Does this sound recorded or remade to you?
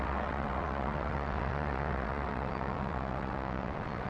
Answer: remade